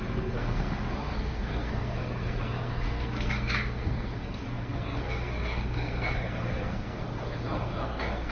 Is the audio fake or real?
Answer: fake